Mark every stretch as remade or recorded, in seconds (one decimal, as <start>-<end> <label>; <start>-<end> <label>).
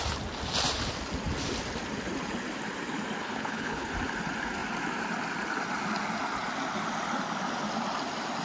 0.0-3.2 recorded; 3.2-3.9 remade; 3.9-8.4 recorded